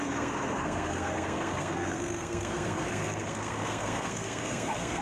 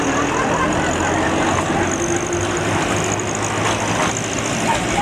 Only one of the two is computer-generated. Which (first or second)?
first